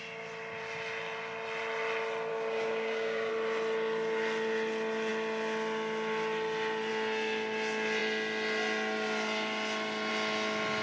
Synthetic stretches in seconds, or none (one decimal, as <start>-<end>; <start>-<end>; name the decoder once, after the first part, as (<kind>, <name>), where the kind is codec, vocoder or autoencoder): 2.3-3.3 (codec, DAC)